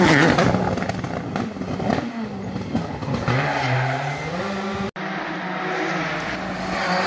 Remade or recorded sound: recorded